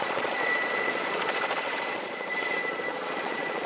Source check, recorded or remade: remade